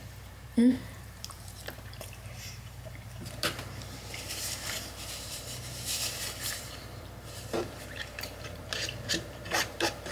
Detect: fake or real fake